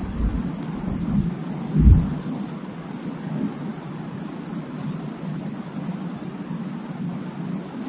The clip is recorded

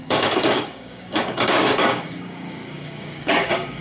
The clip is remade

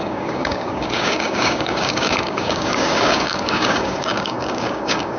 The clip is remade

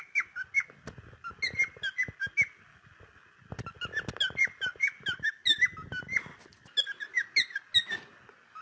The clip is recorded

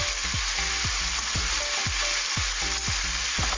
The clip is recorded